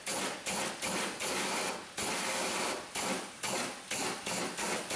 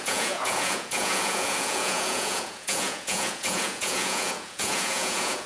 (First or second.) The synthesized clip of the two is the second